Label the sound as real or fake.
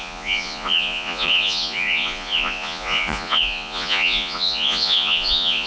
fake